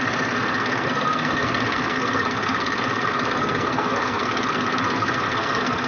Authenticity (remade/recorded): remade